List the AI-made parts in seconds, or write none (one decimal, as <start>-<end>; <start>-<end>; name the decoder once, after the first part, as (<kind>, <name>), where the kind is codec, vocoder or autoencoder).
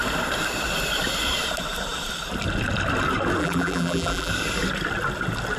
3.4-4.3 (vocoder, BigVGAN v2)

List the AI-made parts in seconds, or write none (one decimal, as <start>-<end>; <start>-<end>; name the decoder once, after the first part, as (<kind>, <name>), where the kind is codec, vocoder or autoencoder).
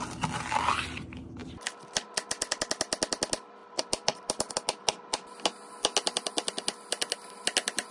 3.6-4.5 (vocoder, BigVGAN v2)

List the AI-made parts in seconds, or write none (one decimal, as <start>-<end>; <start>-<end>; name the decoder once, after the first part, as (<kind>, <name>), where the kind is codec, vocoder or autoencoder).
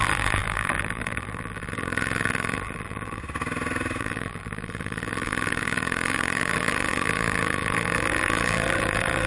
0.0-3.2 (vocoder, BigVGAN v2); 4.0-9.3